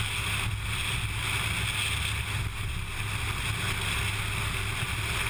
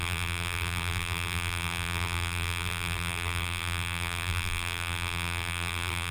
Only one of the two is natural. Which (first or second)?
first